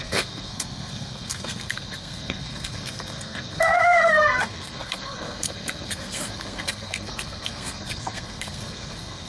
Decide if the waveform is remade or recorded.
remade